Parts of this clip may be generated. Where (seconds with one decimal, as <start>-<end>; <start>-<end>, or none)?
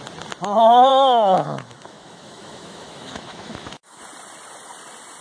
0.9-4.0